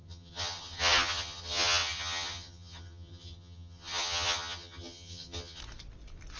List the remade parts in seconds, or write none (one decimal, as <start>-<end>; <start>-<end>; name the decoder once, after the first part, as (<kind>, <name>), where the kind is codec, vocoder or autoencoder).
0.0-5.6 (vocoder, HiFi-GAN)